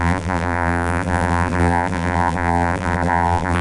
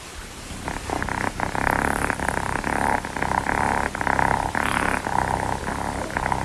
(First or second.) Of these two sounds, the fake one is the first